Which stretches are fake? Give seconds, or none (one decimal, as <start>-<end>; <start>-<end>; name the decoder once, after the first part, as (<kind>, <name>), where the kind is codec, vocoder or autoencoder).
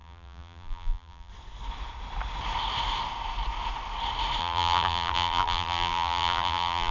0.0-1.3 (vocoder, BigVGAN v2); 4.4-6.9